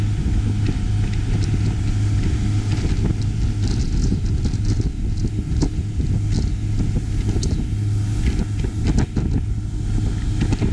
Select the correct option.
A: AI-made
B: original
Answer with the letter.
B